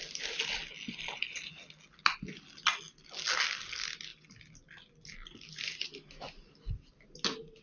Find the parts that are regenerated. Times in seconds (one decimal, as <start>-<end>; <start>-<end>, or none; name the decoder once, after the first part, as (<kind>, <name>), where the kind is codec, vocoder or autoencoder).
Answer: none